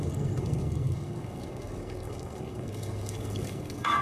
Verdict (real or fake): fake